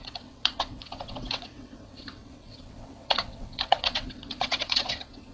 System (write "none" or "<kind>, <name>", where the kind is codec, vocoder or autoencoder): vocoder, WaveNeXt